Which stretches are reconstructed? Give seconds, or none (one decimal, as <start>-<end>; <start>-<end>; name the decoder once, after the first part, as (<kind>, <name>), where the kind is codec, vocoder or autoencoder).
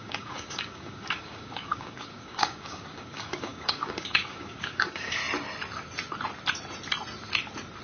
0.0-5.2 (codec, DAC)